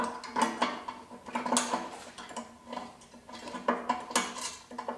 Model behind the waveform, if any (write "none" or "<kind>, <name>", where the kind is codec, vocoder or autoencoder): none